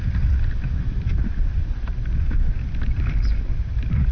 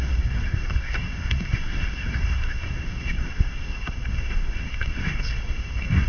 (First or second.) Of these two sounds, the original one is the first